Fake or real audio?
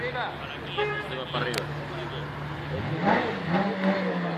real